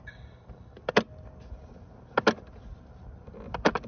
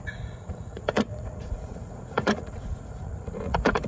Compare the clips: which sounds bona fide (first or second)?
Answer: first